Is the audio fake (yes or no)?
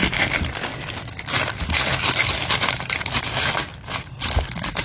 no